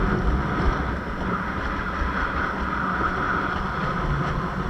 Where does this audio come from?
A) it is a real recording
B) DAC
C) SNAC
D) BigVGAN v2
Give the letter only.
A